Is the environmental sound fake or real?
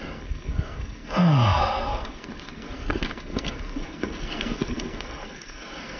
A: fake